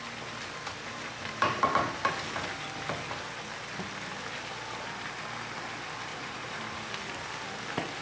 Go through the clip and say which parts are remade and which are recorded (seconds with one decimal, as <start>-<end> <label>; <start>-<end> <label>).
0.0-6.1 recorded; 6.1-6.6 remade; 6.6-8.0 recorded

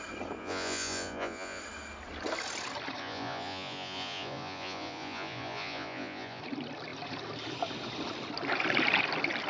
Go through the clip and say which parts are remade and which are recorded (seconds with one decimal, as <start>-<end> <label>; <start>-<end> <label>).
0.0-0.4 recorded; 0.4-1.6 remade; 1.6-3.0 recorded; 3.0-6.4 remade; 6.4-9.5 recorded